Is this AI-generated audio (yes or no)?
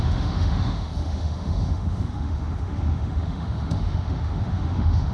yes